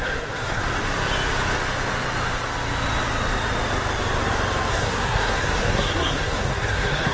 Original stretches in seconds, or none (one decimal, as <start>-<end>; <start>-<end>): 0.6-4.7